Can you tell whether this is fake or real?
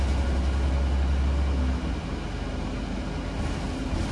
real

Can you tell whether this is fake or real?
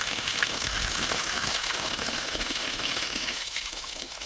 fake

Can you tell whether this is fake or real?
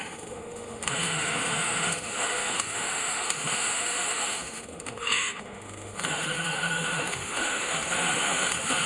fake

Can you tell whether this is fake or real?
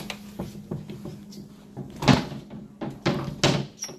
real